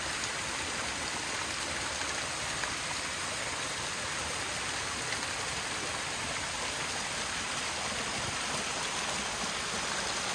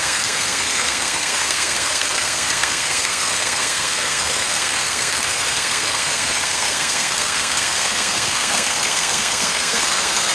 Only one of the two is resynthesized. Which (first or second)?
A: second